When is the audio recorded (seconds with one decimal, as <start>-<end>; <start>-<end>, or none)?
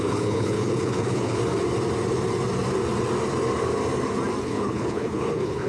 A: 1.4-4.4